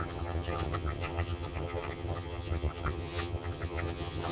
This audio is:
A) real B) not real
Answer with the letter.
B